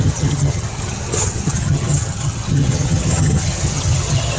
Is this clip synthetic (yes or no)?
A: yes